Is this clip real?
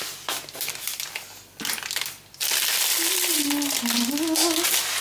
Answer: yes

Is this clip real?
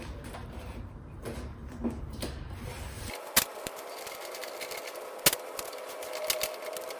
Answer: yes